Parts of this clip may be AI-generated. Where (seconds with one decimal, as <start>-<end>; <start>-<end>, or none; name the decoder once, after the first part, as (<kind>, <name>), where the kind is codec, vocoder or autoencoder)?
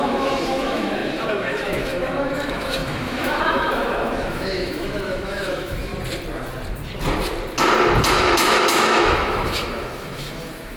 0.0-5.9 (autoencoder, DAC-VAE); 8.1-10.8